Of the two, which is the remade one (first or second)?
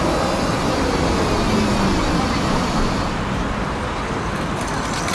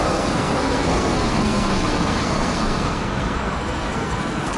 second